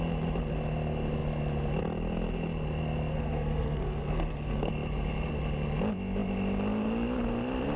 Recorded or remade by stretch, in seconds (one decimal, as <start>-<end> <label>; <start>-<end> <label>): 0.0-3.1 recorded; 3.1-4.7 remade; 4.7-7.8 recorded